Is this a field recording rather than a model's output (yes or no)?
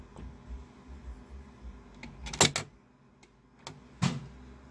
yes